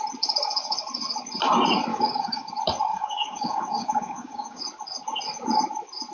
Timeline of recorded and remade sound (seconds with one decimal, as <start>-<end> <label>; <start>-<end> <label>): 0.0-1.9 recorded; 1.9-2.5 remade; 2.5-2.9 recorded; 2.9-4.6 remade; 4.6-6.1 recorded